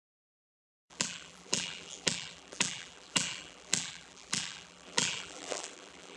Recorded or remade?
remade